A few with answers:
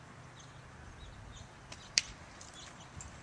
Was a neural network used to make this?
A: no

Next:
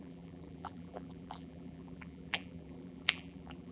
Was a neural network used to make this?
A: yes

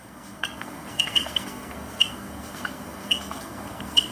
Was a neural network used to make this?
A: yes